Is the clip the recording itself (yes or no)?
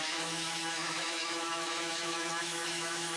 no